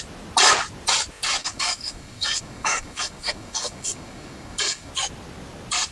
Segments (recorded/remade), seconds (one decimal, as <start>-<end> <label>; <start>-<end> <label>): 0.0-1.4 recorded; 1.4-4.9 remade; 4.9-5.9 recorded